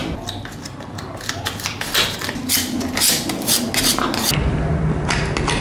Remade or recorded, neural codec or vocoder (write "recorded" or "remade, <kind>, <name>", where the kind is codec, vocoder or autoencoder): recorded